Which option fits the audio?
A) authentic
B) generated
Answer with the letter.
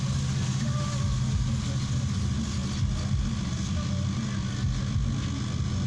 A